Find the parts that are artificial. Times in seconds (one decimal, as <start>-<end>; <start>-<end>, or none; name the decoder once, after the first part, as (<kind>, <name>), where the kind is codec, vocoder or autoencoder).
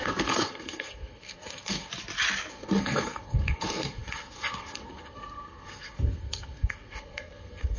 0.0-1.9 (codec, SNAC); 2.5-7.8